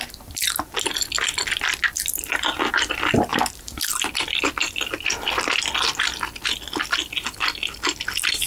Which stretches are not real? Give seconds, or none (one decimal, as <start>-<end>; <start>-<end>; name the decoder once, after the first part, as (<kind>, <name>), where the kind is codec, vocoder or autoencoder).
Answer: none